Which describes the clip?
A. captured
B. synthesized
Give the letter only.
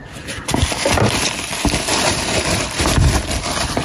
B